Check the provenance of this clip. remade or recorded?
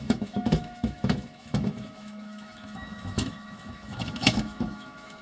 remade